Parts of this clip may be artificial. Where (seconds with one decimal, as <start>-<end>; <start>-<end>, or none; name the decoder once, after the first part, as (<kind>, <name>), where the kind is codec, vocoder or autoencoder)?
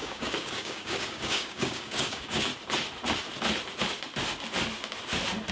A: 0.0-2.5 (codec, DAC)